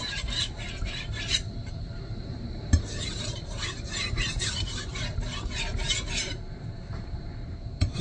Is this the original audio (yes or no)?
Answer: no